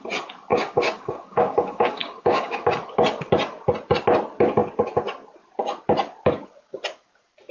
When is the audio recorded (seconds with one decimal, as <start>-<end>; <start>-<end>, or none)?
0.0-0.5; 2.7-7.5